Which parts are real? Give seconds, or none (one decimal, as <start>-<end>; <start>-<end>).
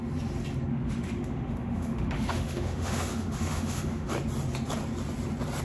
0.0-0.7; 4.1-5.6